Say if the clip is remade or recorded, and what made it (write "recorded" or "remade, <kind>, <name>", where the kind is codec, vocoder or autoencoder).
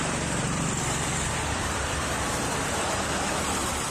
remade, vocoder, BigVGAN v2